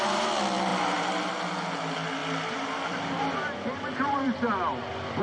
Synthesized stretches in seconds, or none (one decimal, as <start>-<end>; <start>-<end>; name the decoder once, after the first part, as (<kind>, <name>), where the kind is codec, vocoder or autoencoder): 0.7-1.3 (vocoder, BigVGAN v2); 2.2-5.2